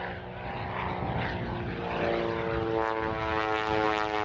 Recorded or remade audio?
recorded